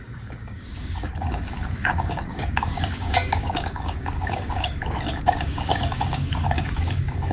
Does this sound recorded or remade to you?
remade